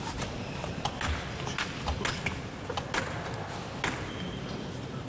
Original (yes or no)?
yes